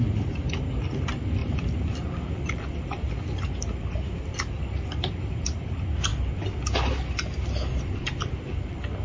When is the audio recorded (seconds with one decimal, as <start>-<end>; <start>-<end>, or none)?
0.0-9.0

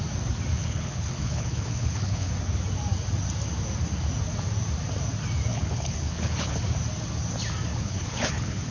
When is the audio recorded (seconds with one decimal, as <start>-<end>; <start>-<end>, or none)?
0.0-0.6; 2.3-5.5; 6.6-7.7

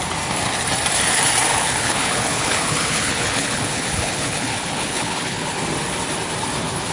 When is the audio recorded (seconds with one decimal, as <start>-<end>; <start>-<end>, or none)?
0.0-1.5; 5.6-6.9

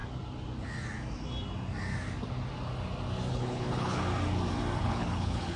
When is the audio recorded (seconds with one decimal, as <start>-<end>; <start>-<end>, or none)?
0.0-3.3; 4.0-4.8

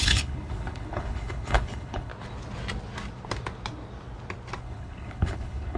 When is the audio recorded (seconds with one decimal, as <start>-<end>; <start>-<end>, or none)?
2.1-4.6

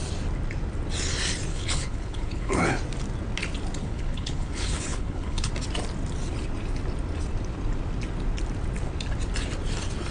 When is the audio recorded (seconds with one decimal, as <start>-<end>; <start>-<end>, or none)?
0.0-1.5; 2.7-3.8; 5.5-10.1

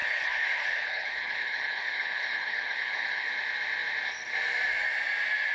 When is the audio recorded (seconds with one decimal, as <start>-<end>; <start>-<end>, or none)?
3.3-5.5

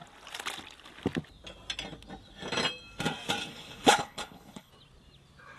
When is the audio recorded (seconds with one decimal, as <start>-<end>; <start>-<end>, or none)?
0.0-3.4; 4.7-5.6